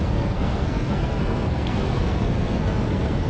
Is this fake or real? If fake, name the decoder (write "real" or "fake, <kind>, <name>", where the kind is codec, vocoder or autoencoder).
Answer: fake, codec, SNAC